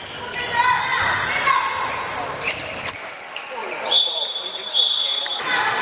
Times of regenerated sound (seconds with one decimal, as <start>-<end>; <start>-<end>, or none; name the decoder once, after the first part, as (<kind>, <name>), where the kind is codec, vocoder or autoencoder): 3.6-5.2 (vocoder, BigVGAN v2)